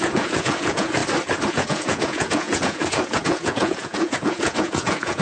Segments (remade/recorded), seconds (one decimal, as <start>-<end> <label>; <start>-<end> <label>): 0.0-1.0 remade; 1.0-1.5 recorded; 1.5-5.2 remade